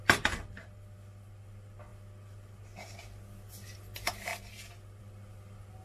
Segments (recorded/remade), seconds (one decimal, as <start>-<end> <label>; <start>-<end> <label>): 0.0-5.8 recorded